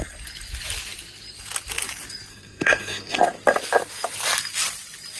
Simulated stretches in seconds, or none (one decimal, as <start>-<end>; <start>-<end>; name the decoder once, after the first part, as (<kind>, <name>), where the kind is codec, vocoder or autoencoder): 2.3-3.2 (codec, SNAC)